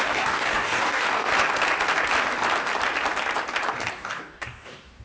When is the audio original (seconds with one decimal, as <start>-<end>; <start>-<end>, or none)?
1.3-3.9